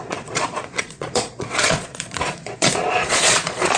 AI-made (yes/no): yes